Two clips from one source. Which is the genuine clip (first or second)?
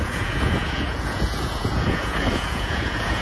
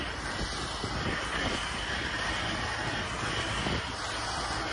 second